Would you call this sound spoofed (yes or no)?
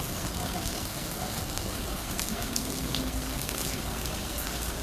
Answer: yes